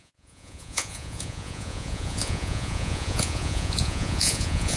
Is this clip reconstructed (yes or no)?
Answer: yes